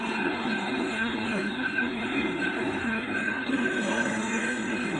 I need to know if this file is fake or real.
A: fake